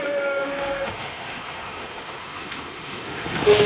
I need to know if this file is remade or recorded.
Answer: remade